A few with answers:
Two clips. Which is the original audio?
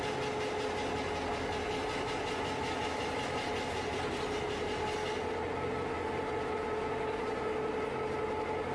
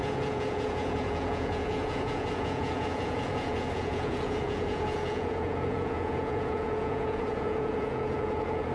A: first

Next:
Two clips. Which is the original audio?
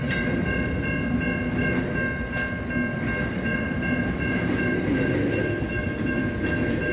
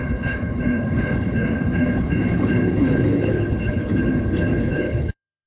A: first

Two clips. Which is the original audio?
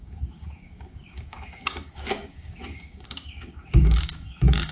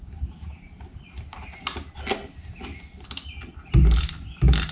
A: second